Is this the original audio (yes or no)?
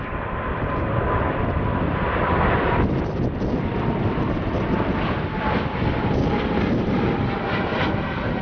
no